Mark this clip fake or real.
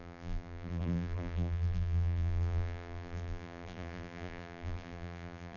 fake